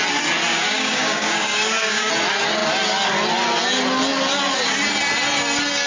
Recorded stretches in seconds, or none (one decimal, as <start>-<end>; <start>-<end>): 0.0-0.5; 2.1-5.9